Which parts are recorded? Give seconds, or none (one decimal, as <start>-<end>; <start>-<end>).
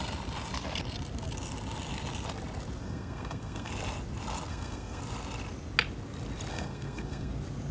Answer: 0.0-2.8; 3.7-4.5; 5.0-6.5; 7.3-7.7